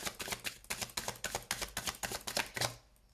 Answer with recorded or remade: recorded